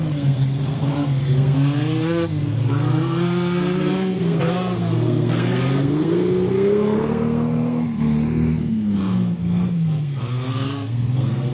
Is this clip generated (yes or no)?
yes